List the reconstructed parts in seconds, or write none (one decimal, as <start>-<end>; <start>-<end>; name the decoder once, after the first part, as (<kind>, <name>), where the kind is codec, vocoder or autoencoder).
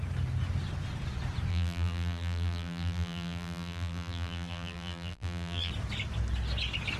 1.5-5.7 (vocoder, BigVGAN v2)